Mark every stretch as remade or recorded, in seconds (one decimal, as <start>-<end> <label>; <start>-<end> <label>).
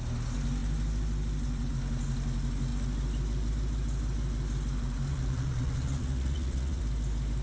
0.0-5.1 recorded; 5.1-6.8 remade; 6.8-7.4 recorded